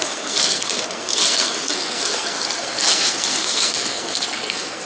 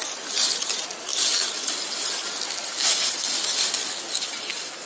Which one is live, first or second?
second